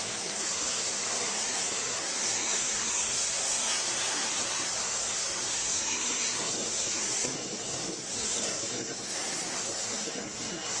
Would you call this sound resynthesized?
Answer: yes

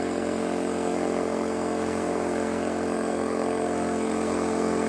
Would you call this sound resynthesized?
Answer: yes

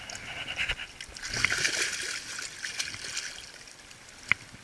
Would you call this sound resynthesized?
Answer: no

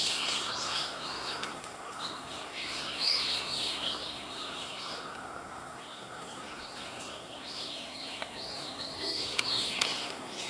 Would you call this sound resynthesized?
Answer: yes